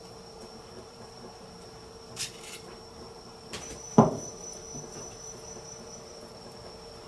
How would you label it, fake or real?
fake